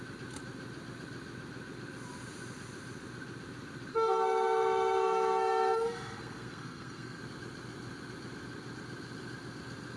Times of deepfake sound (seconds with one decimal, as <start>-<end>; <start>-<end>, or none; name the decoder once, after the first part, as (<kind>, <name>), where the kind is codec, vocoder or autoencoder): 3.9-7.2 (codec, SNAC)